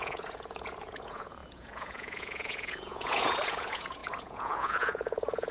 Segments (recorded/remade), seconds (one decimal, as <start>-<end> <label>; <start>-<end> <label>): 0.0-5.5 remade